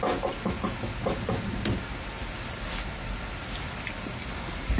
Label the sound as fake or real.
real